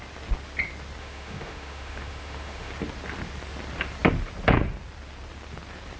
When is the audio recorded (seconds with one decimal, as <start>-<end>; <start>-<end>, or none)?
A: 0.0-1.0; 2.7-6.0